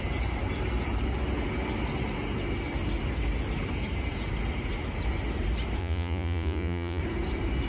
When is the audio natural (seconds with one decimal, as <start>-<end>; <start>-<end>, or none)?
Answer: 0.0-5.8; 7.0-7.7